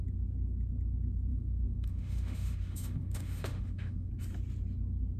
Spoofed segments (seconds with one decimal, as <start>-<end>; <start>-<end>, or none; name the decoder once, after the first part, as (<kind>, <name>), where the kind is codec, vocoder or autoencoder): 1.3-4.1 (autoencoder, DAC-VAE)